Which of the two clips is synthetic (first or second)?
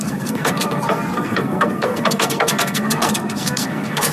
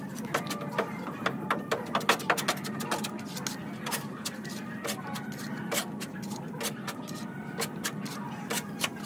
first